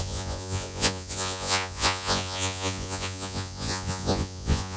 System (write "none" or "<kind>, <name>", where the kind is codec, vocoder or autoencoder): vocoder, Vocos